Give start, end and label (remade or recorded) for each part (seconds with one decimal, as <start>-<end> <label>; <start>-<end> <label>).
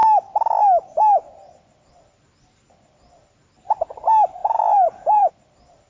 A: 0.0-4.4 recorded; 4.4-5.3 remade; 5.3-5.9 recorded